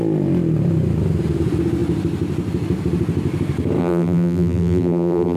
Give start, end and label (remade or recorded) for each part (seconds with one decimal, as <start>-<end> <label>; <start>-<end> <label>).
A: 0.0-3.8 recorded; 3.8-5.4 remade